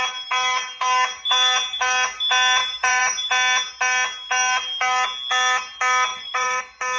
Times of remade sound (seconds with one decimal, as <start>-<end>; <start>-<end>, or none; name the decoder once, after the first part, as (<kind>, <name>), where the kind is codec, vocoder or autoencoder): 2.6-3.3 (vocoder, BigVGAN v2); 6.1-6.6